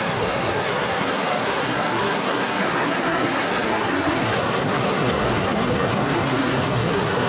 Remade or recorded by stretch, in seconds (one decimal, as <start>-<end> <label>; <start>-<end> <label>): 0.0-7.3 remade